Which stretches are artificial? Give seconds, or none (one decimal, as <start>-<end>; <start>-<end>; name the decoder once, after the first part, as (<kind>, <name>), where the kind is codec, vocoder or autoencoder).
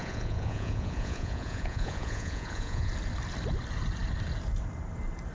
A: 0.0-2.9 (vocoder, Vocos)